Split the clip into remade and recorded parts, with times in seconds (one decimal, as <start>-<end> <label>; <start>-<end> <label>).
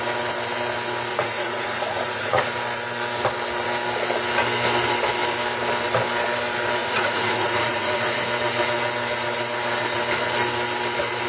0.0-1.1 recorded; 1.1-2.4 remade; 2.4-6.8 recorded; 6.8-8.2 remade; 8.2-11.3 recorded